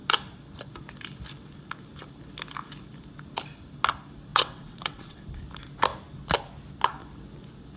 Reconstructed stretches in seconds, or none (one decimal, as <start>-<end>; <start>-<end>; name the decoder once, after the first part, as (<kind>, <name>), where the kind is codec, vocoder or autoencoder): 4.3-5.2 (vocoder, WaveNeXt)